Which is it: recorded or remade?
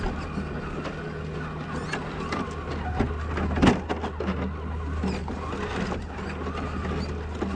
recorded